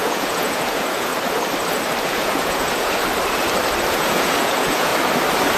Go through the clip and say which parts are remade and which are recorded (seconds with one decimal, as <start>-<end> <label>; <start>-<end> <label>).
0.0-1.1 remade; 1.1-2.0 recorded; 2.0-3.0 remade; 3.0-3.9 recorded; 3.9-4.9 remade; 4.9-5.6 recorded